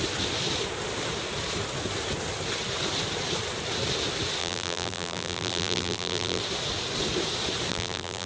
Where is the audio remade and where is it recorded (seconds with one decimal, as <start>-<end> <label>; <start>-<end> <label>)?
0.0-4.4 recorded; 4.4-6.4 remade; 6.4-7.7 recorded; 7.7-8.3 remade